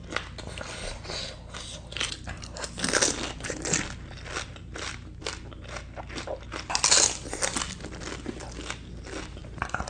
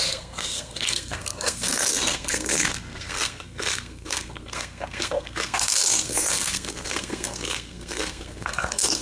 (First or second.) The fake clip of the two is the second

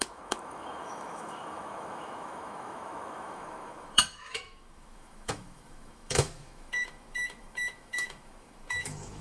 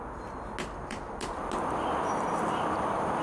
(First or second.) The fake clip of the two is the first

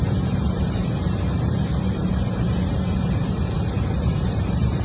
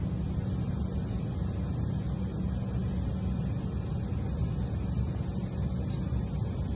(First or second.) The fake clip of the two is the first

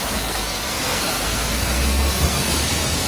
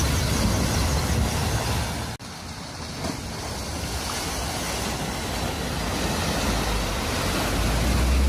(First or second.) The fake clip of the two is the first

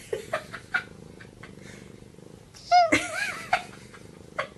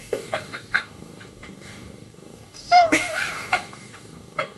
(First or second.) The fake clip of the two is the second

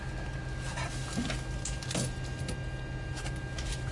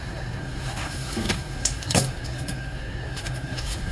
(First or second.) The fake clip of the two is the second